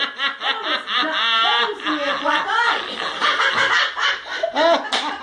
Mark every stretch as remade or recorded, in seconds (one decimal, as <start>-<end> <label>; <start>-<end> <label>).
0.0-5.2 recorded